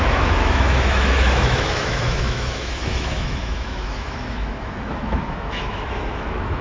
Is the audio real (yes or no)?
no